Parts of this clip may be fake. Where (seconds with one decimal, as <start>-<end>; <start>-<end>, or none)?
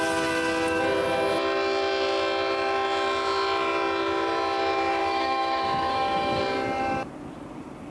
5.0-6.4